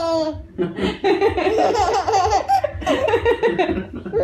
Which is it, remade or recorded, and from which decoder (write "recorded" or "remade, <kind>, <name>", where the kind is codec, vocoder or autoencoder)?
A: recorded